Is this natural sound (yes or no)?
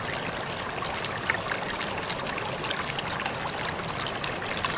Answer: yes